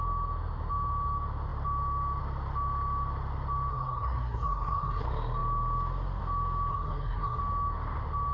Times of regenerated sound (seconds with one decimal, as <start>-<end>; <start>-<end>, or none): 3.7-5.0; 6.7-7.4